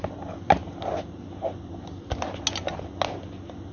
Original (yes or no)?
yes